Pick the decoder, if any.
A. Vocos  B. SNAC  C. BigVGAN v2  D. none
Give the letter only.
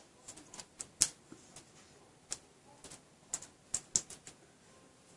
D